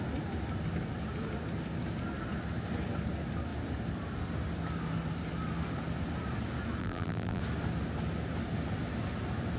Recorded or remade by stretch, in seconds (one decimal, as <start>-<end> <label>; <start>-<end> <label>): 0.0-6.8 recorded; 6.8-7.4 remade; 7.4-9.6 recorded